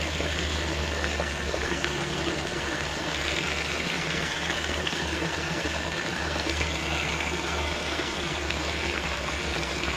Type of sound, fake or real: fake